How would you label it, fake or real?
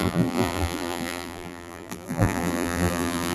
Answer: fake